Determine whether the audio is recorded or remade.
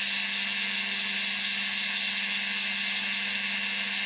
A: recorded